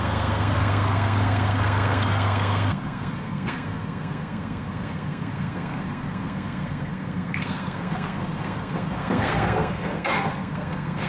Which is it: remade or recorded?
remade